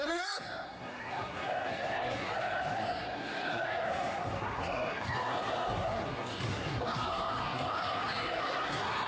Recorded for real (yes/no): no